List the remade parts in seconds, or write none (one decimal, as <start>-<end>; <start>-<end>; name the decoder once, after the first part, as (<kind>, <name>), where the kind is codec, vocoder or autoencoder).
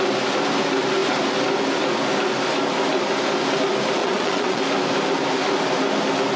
4.0-4.6 (vocoder, Vocos)